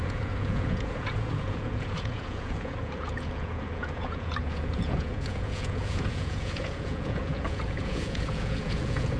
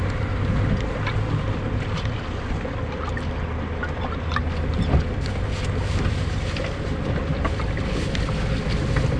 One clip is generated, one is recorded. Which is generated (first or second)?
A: first